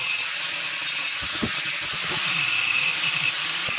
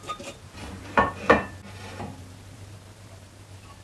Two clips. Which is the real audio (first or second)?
first